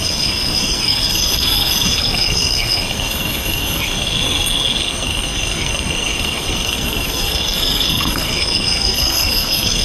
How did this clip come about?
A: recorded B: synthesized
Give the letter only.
B